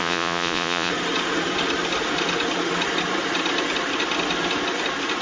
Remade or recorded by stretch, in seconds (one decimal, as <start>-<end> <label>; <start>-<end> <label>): 0.0-0.9 remade; 0.9-5.2 recorded